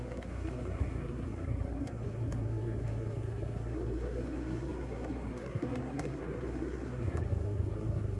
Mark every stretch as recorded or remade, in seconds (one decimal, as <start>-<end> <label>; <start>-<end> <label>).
0.0-8.2 remade